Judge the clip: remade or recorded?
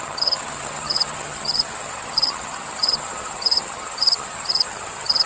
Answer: remade